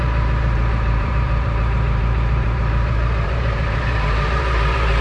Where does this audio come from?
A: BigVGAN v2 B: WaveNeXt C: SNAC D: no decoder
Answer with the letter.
A